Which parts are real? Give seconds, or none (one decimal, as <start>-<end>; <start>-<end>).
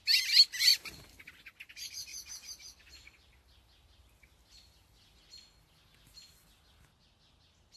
0.0-7.8